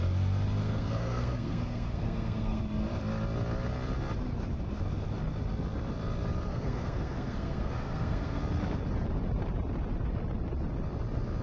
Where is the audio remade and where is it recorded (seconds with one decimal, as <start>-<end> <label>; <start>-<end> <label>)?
0.0-0.6 recorded; 0.6-2.6 remade; 2.6-6.5 recorded; 6.5-8.4 remade; 8.4-11.4 recorded